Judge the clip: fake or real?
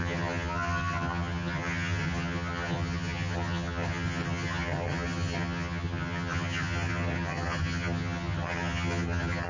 fake